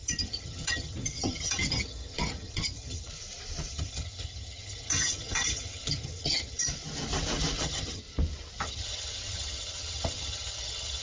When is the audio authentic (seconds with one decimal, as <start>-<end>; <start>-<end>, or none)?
3.1-3.7; 6.6-7.6; 8.0-8.6